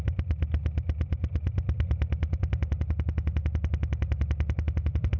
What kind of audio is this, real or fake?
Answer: real